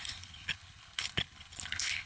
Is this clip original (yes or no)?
no